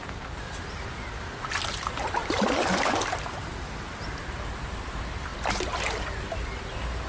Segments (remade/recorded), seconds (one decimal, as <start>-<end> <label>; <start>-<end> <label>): 0.0-7.1 recorded

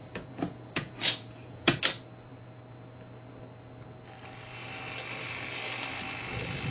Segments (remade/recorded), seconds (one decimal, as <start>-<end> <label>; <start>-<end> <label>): 0.0-1.8 remade; 1.8-6.7 recorded

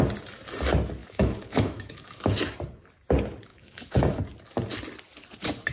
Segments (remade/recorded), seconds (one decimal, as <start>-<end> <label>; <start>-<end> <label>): 0.0-1.0 recorded; 1.0-2.2 remade; 2.2-3.5 recorded; 3.5-4.2 remade; 4.2-5.7 recorded

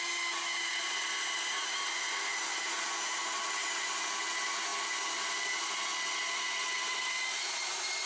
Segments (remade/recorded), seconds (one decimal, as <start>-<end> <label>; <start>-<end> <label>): 0.0-8.1 recorded

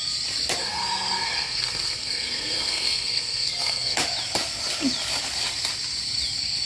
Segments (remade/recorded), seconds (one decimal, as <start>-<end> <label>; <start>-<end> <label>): 0.0-0.6 recorded; 0.6-4.0 remade; 4.0-6.7 recorded

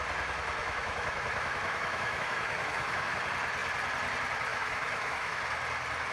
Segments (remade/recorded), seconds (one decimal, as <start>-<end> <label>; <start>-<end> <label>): 0.0-0.6 recorded; 0.6-3.2 remade; 3.2-4.5 recorded; 4.5-5.4 remade; 5.4-6.1 recorded